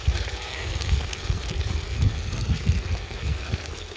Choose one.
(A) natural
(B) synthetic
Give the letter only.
B